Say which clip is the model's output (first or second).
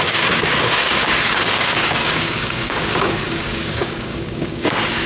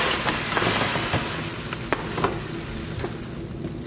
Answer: first